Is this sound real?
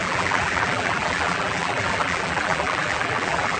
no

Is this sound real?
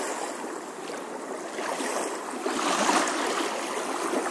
yes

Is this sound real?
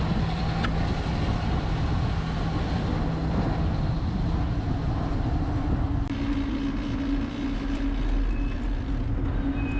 yes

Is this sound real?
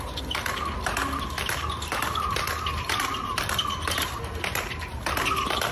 yes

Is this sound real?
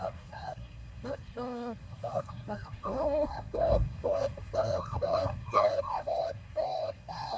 no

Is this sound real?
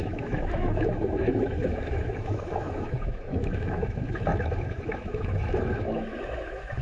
no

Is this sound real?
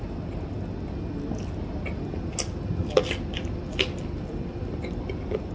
yes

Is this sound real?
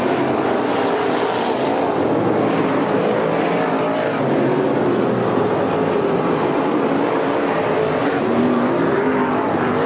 yes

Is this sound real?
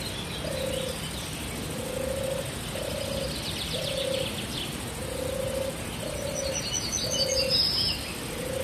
yes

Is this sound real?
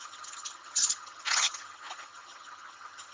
no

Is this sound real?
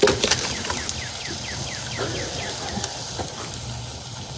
yes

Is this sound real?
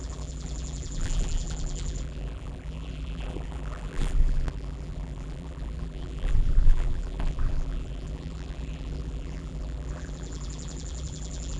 no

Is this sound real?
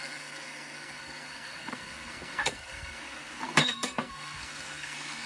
no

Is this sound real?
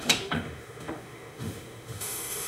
no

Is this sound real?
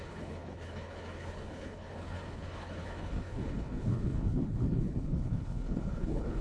no